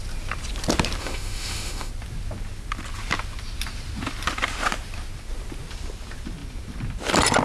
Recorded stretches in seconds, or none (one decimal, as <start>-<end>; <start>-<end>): 0.0-1.0; 1.9-7.4